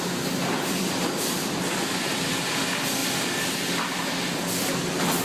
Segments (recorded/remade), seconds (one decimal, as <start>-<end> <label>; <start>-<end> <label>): 0.0-5.2 recorded